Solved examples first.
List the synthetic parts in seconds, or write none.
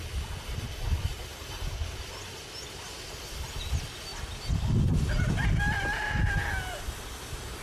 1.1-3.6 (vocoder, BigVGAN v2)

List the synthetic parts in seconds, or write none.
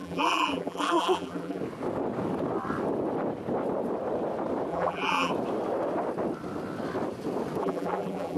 0.0-1.6 (vocoder, BigVGAN v2); 4.7-5.3; 7.6-8.4